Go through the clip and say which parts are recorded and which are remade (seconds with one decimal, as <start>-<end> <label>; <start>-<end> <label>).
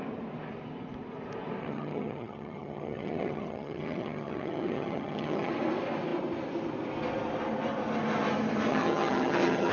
0.0-1.6 recorded; 1.6-5.5 remade; 5.5-8.7 recorded; 8.7-9.7 remade